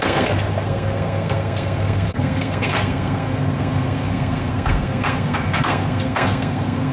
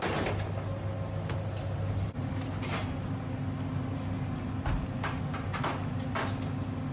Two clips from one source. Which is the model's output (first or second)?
first